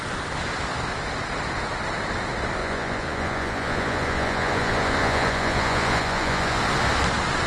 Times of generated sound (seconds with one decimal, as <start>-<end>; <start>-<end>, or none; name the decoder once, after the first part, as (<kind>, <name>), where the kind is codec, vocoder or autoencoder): 2.6-6.6 (vocoder, Vocos)